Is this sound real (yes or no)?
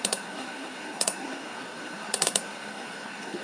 no